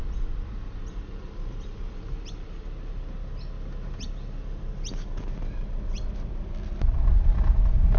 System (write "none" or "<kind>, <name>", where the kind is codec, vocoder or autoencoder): none